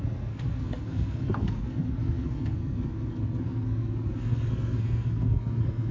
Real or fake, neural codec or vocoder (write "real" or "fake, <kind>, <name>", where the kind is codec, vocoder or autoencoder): fake, codec, SNAC